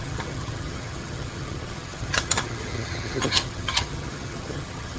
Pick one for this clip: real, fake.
fake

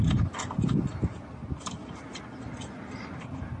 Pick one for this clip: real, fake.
real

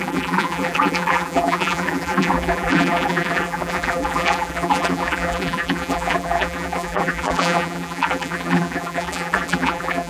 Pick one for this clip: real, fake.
fake